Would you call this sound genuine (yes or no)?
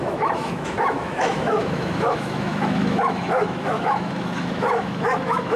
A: no